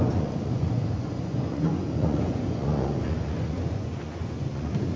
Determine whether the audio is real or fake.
fake